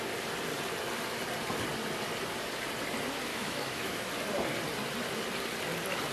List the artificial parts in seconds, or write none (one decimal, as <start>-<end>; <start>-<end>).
3.3-4.1